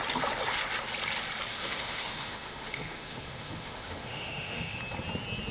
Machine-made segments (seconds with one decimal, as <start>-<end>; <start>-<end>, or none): 1.5-4.8